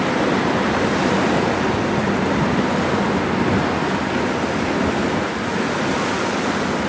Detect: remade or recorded recorded